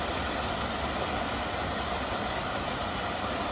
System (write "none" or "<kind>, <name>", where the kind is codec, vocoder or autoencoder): none